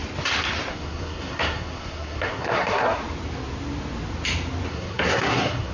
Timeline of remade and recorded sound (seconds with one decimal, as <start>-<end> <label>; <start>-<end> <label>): 0.0-0.7 recorded; 0.7-3.0 remade; 3.0-4.7 recorded; 4.7-5.7 remade